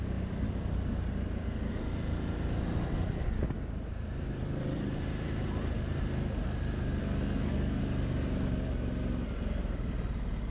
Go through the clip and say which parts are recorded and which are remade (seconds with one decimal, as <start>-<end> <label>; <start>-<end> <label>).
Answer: 0.0-7.0 recorded; 7.0-7.8 remade; 7.8-10.5 recorded